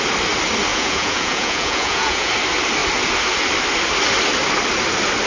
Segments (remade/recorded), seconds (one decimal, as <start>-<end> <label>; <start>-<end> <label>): 0.0-0.7 recorded; 0.7-2.3 remade; 2.3-5.3 recorded